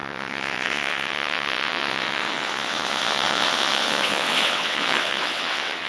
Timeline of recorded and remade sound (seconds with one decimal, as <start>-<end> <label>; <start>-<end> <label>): 0.0-5.9 remade

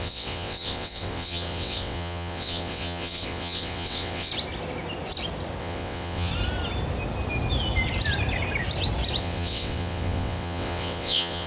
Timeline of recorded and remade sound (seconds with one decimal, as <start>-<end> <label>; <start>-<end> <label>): 0.0-4.3 remade; 4.3-5.6 recorded; 5.6-6.3 remade; 6.3-9.2 recorded; 9.2-11.5 remade

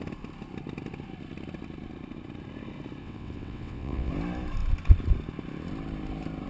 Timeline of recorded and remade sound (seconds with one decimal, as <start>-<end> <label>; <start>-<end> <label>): 0.0-3.0 recorded; 3.0-4.1 remade; 4.1-6.5 recorded